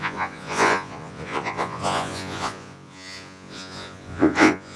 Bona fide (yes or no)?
no